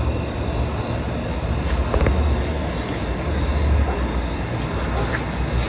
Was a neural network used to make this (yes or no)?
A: no